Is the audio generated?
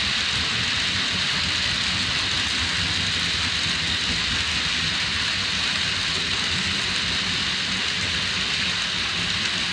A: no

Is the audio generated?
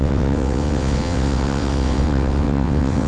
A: yes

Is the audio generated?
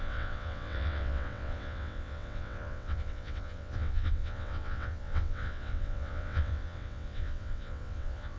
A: yes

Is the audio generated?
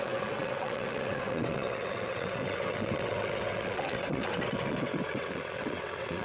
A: yes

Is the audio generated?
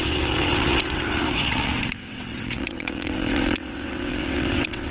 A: yes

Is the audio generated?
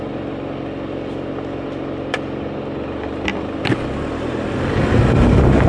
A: no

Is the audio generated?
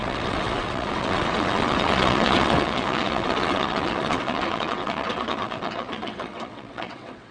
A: yes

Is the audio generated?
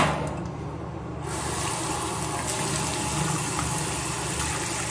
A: no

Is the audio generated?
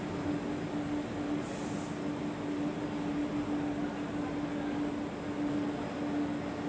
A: no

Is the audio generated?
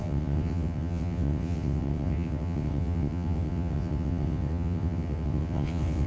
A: yes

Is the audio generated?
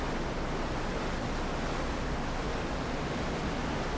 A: no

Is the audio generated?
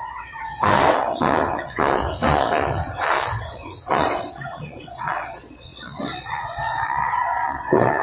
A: yes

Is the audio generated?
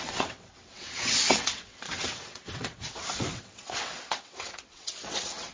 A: yes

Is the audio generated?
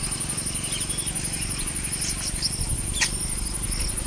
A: no